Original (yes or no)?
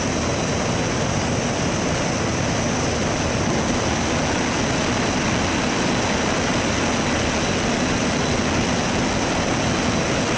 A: yes